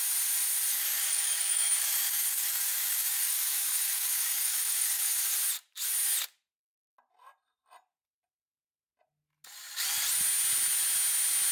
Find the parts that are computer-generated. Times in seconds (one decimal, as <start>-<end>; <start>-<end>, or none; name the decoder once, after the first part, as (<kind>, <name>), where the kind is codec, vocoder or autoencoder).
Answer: 0.7-5.1 (codec, DAC)